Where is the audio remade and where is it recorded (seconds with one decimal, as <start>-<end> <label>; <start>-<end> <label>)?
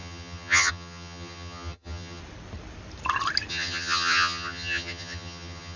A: 0.0-2.2 remade; 2.2-3.5 recorded; 3.5-5.8 remade